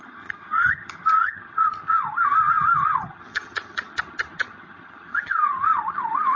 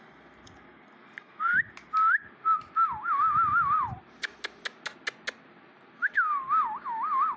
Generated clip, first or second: first